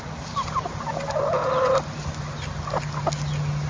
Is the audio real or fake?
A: real